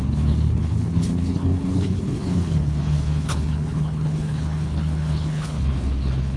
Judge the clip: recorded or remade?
remade